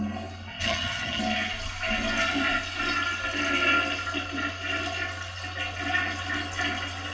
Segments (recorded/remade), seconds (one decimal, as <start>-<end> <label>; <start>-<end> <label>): 0.0-0.5 recorded; 0.5-1.2 remade; 1.2-7.1 recorded